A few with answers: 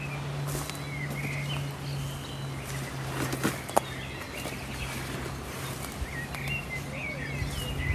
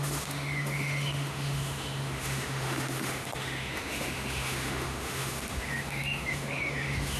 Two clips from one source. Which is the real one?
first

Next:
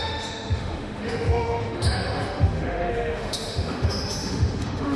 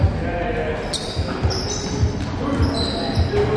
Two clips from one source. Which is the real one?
second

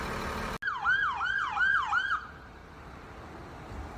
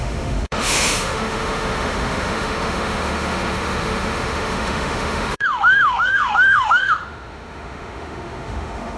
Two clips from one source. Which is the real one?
first